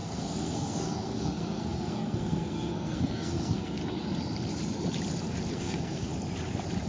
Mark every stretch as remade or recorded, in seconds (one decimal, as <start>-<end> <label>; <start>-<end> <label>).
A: 0.0-3.8 remade; 3.8-5.5 recorded; 5.5-6.1 remade; 6.1-6.9 recorded